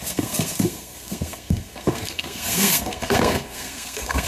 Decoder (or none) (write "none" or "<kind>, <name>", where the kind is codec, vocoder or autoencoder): codec, SNAC